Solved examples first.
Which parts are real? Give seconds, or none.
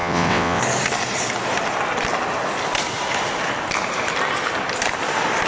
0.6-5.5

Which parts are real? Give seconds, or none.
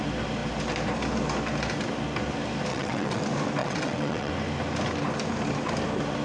0.0-2.7; 3.2-3.6; 4.3-6.2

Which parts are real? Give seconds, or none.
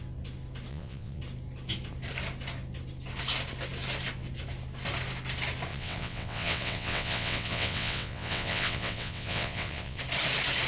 0.0-0.7; 1.2-5.7; 10.0-10.7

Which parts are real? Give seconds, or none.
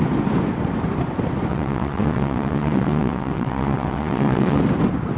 0.0-1.5; 4.6-5.2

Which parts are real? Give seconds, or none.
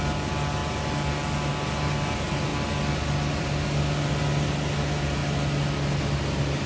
0.0-6.7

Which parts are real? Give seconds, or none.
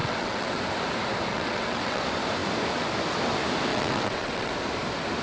0.6-1.3; 2.0-3.7; 4.5-5.2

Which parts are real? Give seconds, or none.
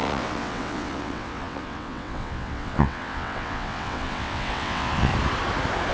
5.1-5.9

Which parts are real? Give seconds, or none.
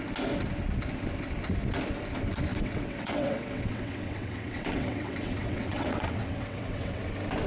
0.0-2.5; 7.0-7.5